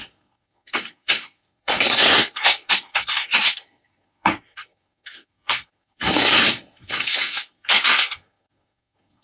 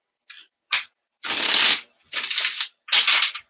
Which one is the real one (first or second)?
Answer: second